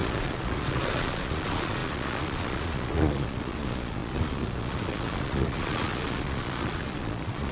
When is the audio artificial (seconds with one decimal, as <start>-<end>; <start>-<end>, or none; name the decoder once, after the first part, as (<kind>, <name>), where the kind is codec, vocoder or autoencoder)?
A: 0.0-7.5 (vocoder, Vocos)